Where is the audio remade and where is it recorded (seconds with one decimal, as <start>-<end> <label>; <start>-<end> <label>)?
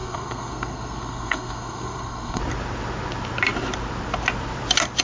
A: 0.0-2.4 remade; 2.4-5.0 recorded